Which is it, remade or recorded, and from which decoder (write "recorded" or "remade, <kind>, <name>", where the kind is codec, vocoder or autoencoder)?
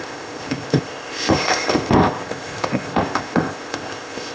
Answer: remade, codec, ZipCodec